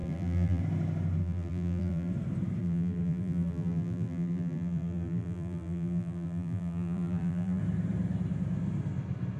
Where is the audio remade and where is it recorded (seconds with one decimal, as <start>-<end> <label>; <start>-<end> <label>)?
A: 0.0-0.6 remade; 0.6-1.2 recorded; 1.2-2.1 remade; 2.1-2.6 recorded; 2.6-7.6 remade; 7.6-9.4 recorded